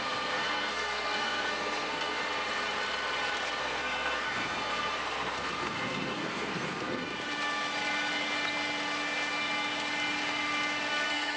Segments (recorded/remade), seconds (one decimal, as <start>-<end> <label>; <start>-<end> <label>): 0.0-2.2 remade; 2.2-3.6 recorded; 3.6-7.1 remade; 7.1-10.9 recorded; 10.9-11.4 remade